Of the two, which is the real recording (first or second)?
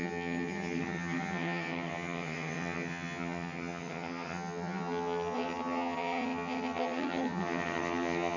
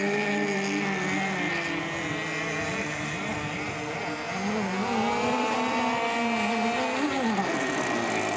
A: second